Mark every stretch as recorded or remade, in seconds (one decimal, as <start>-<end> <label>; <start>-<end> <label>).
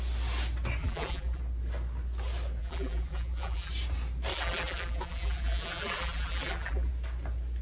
0.0-0.8 recorded; 0.8-1.4 remade; 1.4-2.6 recorded; 2.6-3.7 remade; 3.7-4.3 recorded; 4.3-6.9 remade; 6.9-7.6 recorded